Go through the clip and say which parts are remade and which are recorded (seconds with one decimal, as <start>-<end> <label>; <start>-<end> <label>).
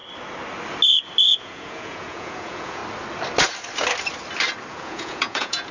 0.0-1.4 recorded; 1.4-2.8 remade; 2.8-4.7 recorded; 4.7-5.7 remade